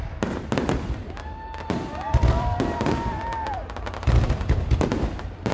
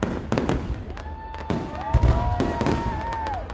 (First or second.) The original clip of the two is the second